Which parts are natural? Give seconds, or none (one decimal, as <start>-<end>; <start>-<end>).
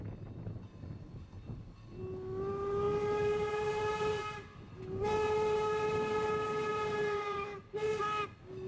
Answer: 0.0-8.7